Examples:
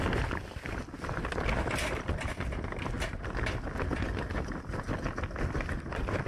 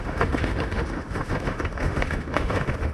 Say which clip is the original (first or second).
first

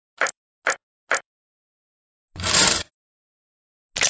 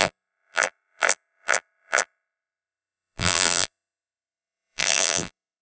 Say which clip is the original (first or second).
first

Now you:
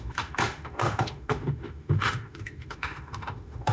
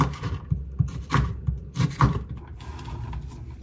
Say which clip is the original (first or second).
second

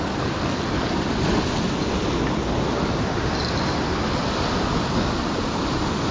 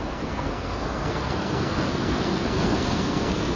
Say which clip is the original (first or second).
first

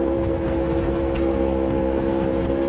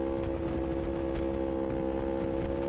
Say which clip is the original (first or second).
second